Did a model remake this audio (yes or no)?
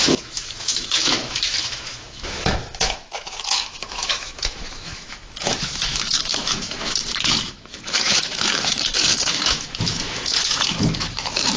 yes